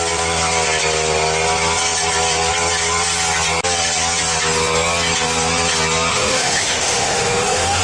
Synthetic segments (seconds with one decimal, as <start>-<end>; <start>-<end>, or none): 6.1-7.8